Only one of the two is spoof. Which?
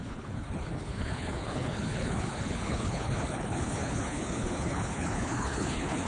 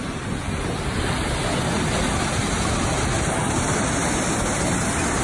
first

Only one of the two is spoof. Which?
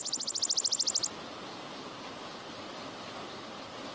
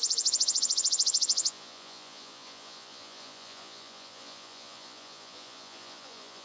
second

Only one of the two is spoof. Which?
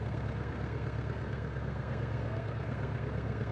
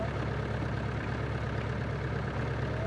first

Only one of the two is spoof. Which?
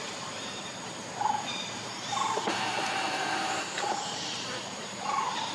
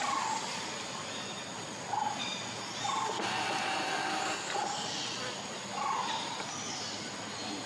first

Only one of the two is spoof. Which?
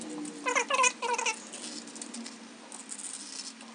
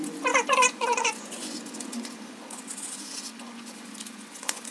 second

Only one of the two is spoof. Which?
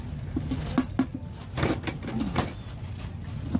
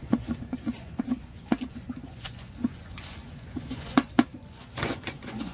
second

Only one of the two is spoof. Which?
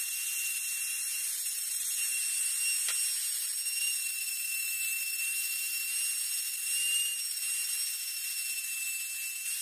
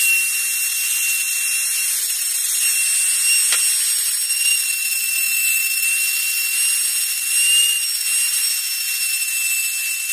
first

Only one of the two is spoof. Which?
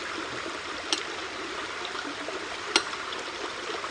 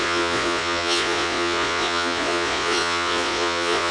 second